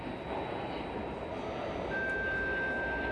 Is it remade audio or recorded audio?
recorded